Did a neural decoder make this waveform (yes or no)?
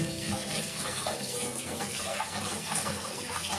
yes